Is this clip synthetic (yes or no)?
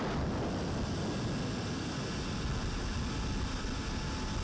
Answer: no